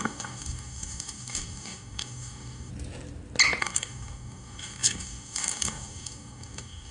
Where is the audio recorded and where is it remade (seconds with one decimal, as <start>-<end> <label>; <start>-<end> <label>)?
0.0-2.7 remade; 2.7-3.6 recorded; 3.6-6.9 remade